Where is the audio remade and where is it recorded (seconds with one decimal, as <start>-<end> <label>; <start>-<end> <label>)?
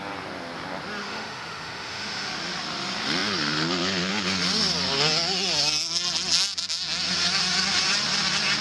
0.0-1.0 recorded; 1.0-2.3 remade; 2.3-8.6 recorded